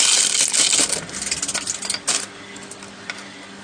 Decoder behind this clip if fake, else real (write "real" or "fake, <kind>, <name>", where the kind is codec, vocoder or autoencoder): real